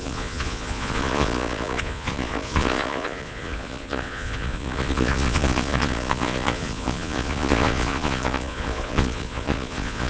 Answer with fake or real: fake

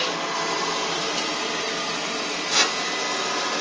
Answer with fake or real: real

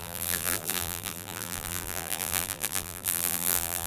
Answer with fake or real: fake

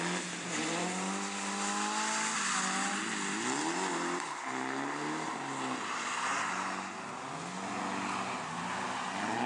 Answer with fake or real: real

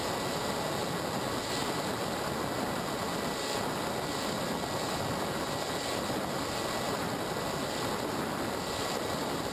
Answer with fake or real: real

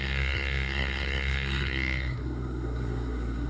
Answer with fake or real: fake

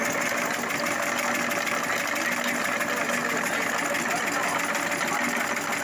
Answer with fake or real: real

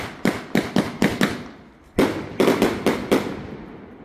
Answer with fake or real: real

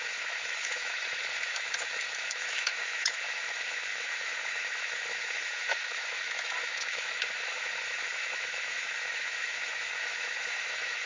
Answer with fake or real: fake